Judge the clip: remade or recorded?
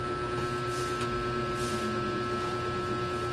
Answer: recorded